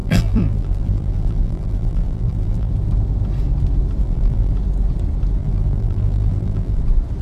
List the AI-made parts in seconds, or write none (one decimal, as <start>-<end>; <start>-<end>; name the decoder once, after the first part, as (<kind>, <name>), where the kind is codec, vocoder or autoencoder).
0.0-2.7 (vocoder, BigVGAN v2); 4.0-4.5; 5.4-6.8